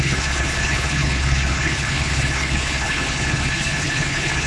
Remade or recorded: remade